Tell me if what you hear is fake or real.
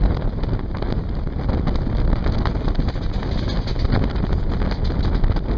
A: real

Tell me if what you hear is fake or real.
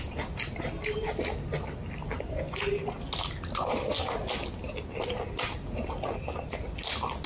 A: real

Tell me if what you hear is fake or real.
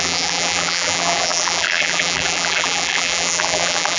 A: fake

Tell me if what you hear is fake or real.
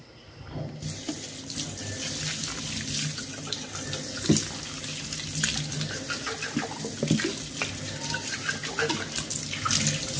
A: real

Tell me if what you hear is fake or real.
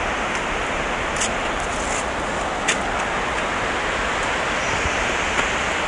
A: real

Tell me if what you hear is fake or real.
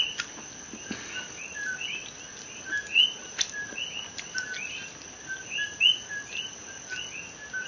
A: real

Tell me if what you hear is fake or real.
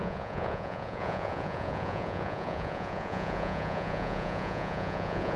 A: fake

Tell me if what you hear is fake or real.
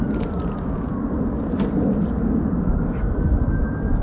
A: real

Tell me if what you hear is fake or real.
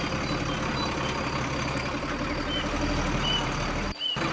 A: real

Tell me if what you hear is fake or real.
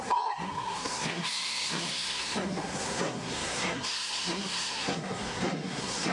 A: fake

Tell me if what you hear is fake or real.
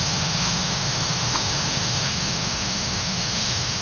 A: fake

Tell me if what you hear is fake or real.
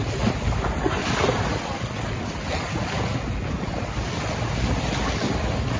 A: real